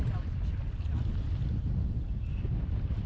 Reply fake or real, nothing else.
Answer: real